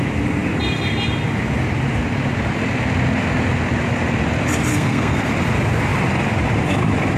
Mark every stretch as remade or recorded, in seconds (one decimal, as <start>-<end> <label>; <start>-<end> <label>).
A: 0.0-4.7 recorded; 4.7-5.3 remade; 5.3-7.2 recorded